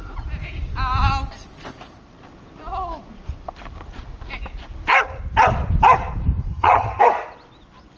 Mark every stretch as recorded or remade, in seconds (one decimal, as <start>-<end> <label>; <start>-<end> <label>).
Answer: 0.0-6.5 recorded; 6.5-7.0 remade; 7.0-8.0 recorded